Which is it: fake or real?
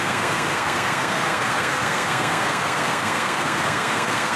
fake